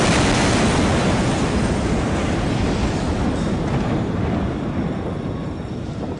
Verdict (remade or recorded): recorded